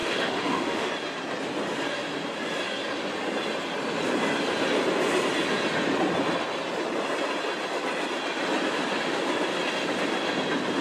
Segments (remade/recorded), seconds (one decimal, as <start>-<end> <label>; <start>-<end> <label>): 0.0-0.9 remade; 0.9-10.8 recorded